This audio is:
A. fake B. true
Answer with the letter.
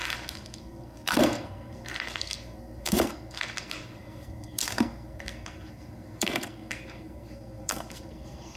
A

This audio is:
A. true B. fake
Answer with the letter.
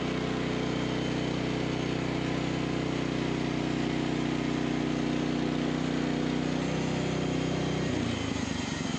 A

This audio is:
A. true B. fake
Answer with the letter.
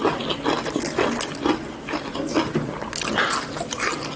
A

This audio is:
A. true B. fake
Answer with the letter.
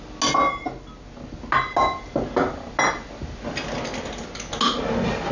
A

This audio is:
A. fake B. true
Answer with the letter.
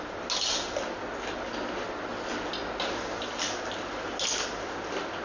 B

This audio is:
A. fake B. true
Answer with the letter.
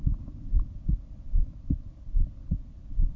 B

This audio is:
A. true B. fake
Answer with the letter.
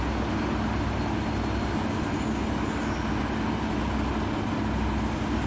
A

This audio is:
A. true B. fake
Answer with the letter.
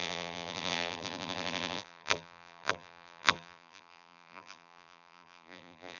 B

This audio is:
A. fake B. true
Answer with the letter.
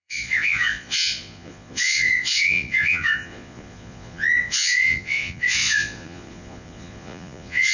A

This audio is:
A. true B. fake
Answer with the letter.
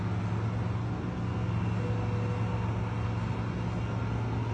A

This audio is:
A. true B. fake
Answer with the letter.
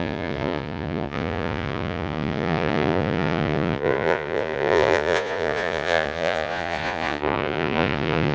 B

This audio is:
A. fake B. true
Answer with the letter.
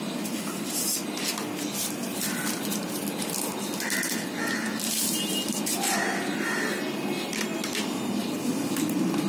B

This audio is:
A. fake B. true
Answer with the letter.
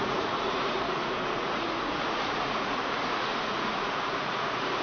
A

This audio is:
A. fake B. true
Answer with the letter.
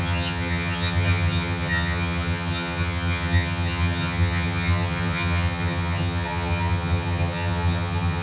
A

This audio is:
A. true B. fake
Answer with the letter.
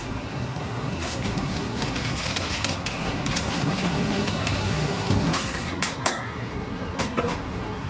B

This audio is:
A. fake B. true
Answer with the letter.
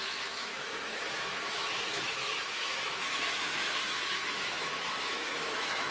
A